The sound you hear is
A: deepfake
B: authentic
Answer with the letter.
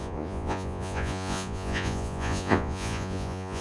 A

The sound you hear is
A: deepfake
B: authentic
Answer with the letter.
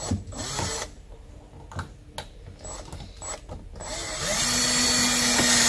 B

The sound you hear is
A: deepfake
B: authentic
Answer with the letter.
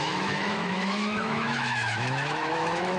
A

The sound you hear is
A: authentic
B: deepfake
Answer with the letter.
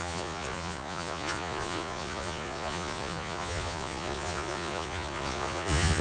B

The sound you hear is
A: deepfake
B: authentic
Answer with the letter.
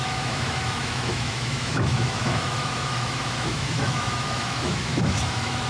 A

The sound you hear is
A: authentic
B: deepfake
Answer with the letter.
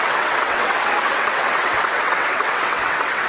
B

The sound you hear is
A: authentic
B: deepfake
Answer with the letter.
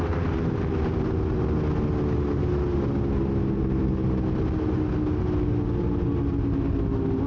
A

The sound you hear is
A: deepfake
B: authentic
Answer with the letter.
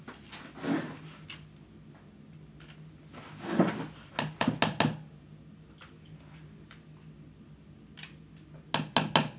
B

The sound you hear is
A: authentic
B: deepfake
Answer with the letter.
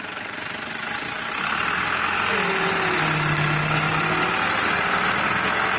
A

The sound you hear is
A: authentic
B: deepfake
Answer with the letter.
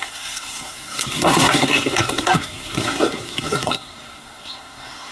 B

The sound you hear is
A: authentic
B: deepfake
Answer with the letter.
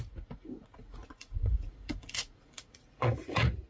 B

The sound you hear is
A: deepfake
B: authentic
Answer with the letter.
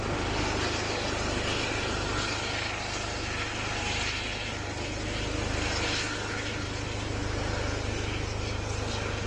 B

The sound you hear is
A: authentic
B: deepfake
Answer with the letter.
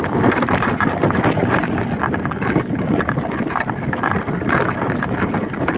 A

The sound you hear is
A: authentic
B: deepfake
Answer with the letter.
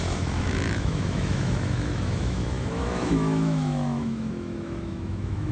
B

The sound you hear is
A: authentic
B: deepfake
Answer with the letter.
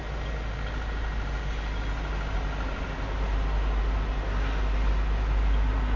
A